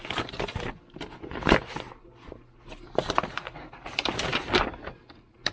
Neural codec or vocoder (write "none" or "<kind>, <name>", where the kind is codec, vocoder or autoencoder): none